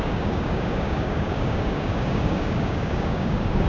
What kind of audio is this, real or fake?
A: fake